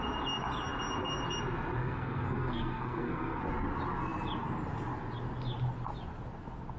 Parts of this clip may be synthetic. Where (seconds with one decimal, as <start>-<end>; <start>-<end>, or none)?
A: 1.8-3.4